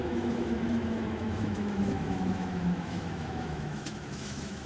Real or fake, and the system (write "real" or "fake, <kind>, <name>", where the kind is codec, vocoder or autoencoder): fake, autoencoder, DAC-VAE